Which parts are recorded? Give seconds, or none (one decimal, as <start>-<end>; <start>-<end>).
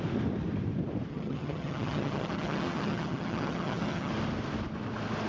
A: 0.0-1.1; 4.1-5.3